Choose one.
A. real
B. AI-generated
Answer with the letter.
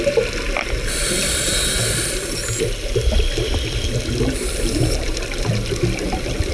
A